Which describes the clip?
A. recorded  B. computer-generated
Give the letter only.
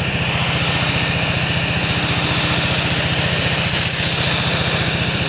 A